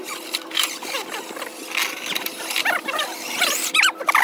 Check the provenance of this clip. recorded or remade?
recorded